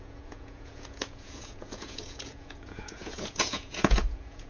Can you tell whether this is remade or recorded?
remade